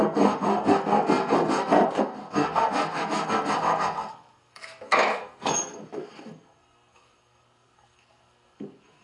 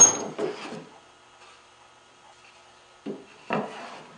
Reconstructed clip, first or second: first